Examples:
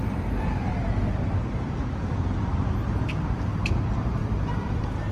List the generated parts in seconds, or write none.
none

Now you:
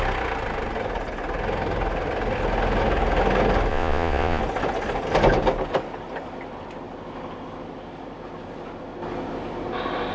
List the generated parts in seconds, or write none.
3.7-4.4 (vocoder, Vocos)